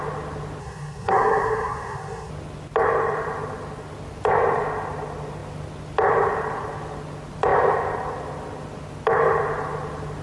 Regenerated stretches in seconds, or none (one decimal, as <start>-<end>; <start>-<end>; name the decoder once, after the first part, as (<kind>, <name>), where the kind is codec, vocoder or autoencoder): 0.6-2.3 (codec, SNAC)